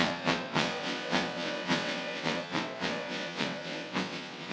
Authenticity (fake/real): fake